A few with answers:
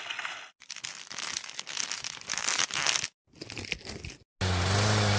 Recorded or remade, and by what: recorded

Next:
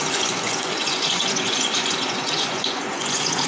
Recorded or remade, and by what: remade, vocoder, Vocos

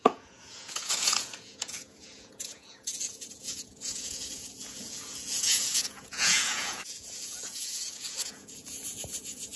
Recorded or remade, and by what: remade, vocoder, Vocos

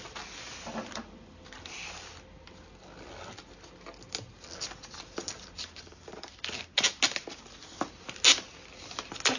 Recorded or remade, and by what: recorded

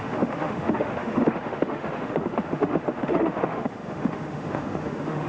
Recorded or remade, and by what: remade, autoencoder, DAC-VAE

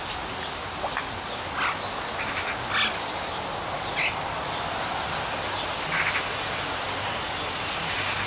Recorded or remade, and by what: recorded